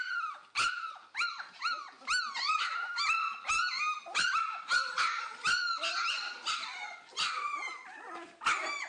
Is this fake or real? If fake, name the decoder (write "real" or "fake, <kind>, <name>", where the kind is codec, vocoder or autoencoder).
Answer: real